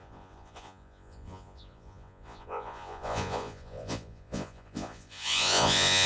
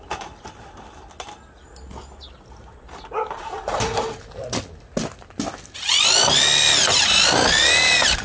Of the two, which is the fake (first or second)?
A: first